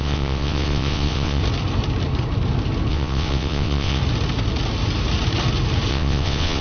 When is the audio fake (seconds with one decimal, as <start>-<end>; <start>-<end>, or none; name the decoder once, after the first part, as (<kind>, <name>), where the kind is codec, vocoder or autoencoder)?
0.0-1.4 (vocoder, WaveNeXt); 2.9-4.0; 5.9-6.6